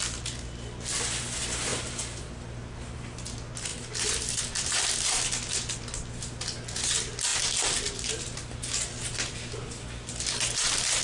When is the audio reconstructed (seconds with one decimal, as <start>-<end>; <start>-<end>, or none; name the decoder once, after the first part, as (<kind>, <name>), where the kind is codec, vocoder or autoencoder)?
none